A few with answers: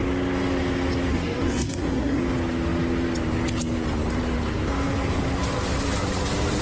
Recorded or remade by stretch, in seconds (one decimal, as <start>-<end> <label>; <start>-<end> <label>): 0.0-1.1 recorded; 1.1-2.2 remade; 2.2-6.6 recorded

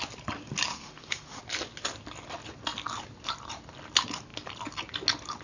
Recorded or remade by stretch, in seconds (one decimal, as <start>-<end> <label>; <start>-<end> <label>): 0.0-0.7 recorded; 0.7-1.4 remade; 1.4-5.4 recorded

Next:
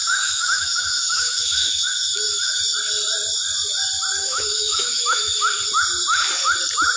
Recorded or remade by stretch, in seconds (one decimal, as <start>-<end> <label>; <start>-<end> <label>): 0.0-2.6 remade; 2.6-4.2 recorded; 4.2-5.3 remade; 5.3-7.0 recorded

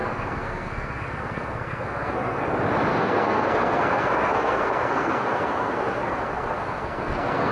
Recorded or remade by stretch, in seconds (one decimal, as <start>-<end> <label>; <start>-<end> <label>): 0.0-2.4 remade; 2.4-2.9 recorded; 2.9-7.5 remade

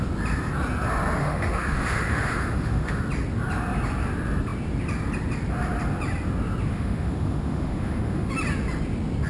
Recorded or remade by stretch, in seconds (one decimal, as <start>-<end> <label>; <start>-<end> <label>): 0.0-1.2 recorded; 1.2-3.0 remade; 3.0-6.7 recorded; 6.7-8.3 remade; 8.3-9.3 recorded

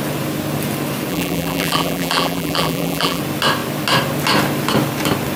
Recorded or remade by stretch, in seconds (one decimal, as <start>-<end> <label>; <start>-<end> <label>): 0.0-1.1 recorded; 1.1-3.2 remade; 3.2-5.4 recorded